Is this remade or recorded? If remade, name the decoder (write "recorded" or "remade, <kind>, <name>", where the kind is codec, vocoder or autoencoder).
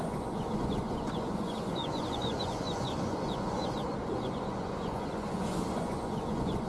remade, vocoder, Vocos